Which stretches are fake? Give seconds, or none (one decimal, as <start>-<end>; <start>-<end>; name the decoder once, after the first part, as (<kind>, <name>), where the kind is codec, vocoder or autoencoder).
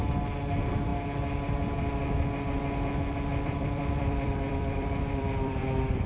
3.3-6.1 (vocoder, BigVGAN v2)